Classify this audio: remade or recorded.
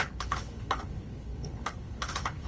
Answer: remade